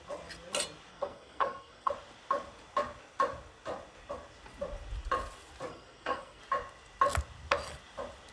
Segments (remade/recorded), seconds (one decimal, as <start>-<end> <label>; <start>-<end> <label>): 0.0-0.9 recorded; 0.9-1.9 remade; 1.9-5.7 recorded; 5.7-6.4 remade; 6.4-8.3 recorded